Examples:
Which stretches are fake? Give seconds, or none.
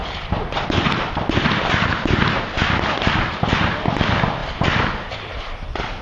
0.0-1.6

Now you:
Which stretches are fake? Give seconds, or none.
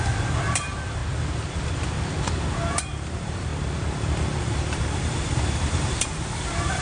0.0-1.0; 2.7-3.5; 4.4-6.8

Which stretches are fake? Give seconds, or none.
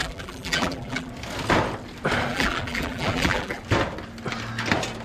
0.0-1.1; 2.3-3.6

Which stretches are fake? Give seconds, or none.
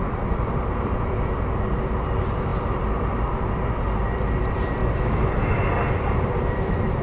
0.0-4.8; 5.9-7.0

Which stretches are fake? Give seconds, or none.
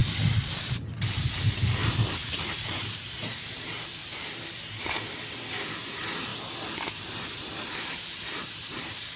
2.6-4.0; 5.8-6.3; 7.3-9.2